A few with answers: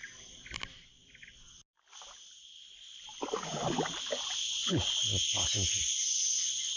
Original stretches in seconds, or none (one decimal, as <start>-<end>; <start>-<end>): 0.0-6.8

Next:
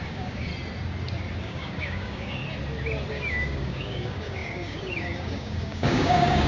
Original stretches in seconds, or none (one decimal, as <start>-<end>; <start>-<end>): 0.5-1.4; 2.4-3.1

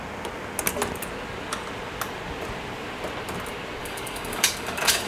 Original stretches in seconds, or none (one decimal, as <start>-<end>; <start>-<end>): 0.0-3.8

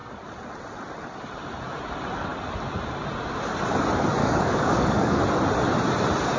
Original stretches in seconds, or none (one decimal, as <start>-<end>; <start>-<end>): 0.0-4.2; 5.2-6.4